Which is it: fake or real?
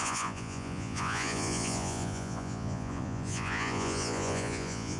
fake